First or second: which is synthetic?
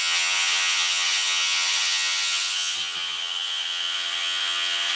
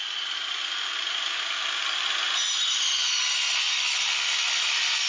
first